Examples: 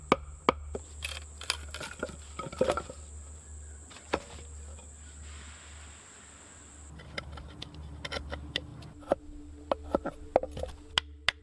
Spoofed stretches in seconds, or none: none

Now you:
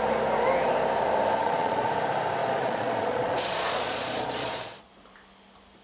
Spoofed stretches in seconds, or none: 1.4-1.9 (vocoder, Vocos); 2.4-4.9

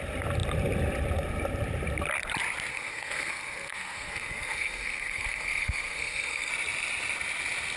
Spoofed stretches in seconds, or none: 2.7-6.5 (codec, SNAC)

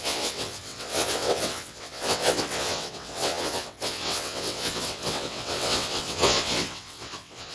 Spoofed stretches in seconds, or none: 0.0-7.5 (vocoder, WaveNeXt)